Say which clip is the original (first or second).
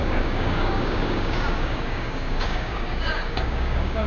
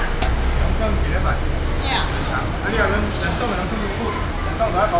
second